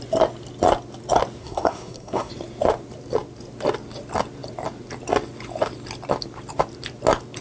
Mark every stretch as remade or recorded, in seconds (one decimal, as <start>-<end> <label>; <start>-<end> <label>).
0.0-1.4 recorded; 1.4-2.3 remade; 2.3-7.4 recorded